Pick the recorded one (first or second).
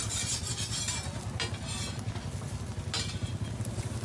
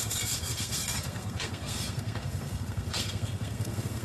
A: first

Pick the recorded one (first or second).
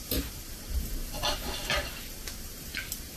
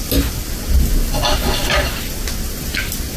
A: second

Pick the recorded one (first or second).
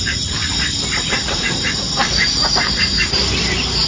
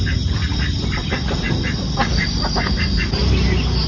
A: second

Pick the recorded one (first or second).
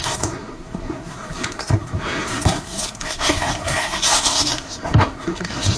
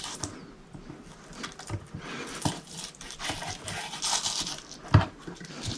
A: second